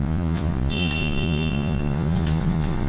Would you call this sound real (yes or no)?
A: no